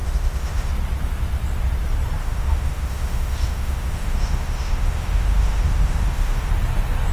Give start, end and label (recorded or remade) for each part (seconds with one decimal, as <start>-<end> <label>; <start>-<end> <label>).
0.0-0.7 remade; 0.7-2.2 recorded; 2.2-6.5 remade; 6.5-7.1 recorded